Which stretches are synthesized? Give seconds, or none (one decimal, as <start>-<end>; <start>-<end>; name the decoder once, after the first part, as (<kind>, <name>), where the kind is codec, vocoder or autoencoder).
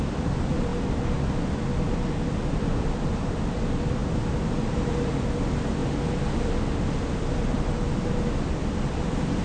0.0-0.7 (vocoder, BigVGAN v2); 2.5-4.0; 4.5-5.8; 6.8-9.4